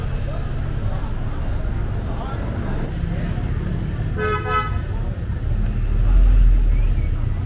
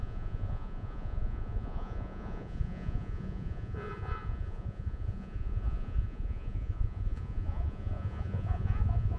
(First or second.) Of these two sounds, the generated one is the second